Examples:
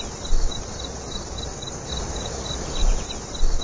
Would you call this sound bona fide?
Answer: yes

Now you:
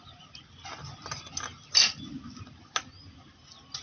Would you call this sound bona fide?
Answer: yes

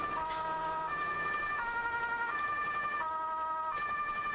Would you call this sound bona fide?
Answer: yes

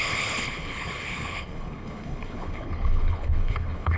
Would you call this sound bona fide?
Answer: no